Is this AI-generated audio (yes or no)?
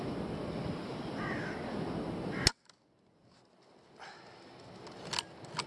no